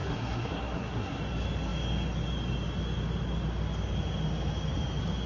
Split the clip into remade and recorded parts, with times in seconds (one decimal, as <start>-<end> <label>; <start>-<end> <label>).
0.0-1.2 remade; 1.2-5.3 recorded